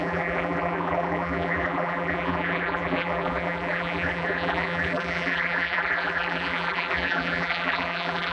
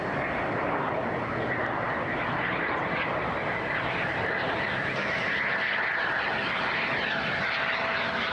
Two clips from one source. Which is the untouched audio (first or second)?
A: second